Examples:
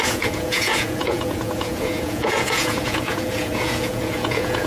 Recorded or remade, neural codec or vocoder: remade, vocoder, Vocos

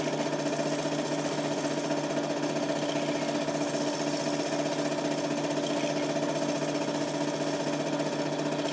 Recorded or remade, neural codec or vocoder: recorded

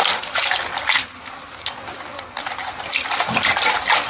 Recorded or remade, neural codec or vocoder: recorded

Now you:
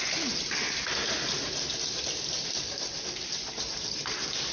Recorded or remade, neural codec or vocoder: recorded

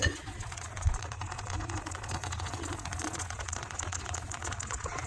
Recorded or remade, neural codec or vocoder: remade, vocoder, Vocos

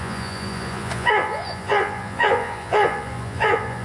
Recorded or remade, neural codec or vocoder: remade, vocoder, Vocos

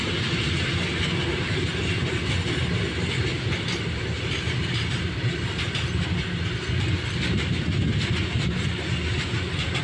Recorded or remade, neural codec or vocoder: recorded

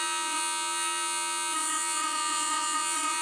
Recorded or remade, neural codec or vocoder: remade, vocoder, Vocos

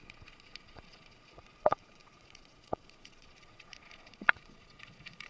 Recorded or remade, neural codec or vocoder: remade, vocoder, Vocos